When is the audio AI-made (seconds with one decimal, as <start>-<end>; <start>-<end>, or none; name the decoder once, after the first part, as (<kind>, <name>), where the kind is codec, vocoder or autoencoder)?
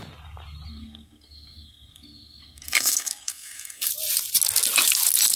0.7-3.9 (codec, SNAC)